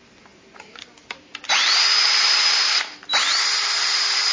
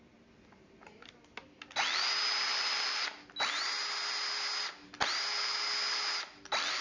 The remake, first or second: first